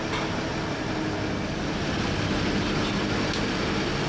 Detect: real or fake real